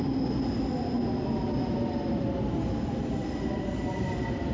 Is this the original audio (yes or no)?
yes